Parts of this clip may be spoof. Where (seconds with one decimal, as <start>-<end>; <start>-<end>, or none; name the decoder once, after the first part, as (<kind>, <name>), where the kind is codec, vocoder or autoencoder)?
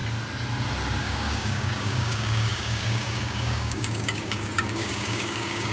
1.0-5.7 (codec, DAC)